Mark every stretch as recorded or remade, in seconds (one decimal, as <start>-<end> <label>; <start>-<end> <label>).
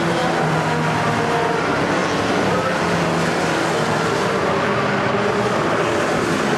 0.0-2.0 recorded; 2.0-2.6 remade; 2.6-6.6 recorded